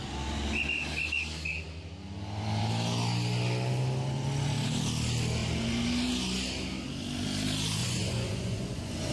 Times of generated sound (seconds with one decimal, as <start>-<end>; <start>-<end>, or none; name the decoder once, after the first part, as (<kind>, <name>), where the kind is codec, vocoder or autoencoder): 7.8-9.1 (vocoder, Vocos)